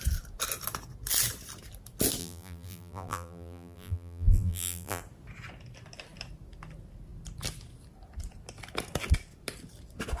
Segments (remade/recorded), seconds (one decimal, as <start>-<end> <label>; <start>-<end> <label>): 0.0-2.2 recorded; 2.2-5.0 remade; 5.0-10.2 recorded